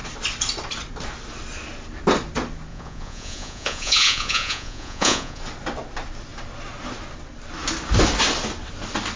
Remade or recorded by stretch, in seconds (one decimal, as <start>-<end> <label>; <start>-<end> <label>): 0.0-2.7 recorded; 2.7-5.4 remade; 5.4-9.2 recorded